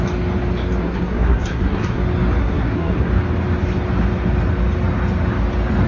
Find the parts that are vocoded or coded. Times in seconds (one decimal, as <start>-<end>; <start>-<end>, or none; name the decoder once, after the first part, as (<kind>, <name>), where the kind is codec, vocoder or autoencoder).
0.8-2.0 (codec, SNAC); 2.4-3.1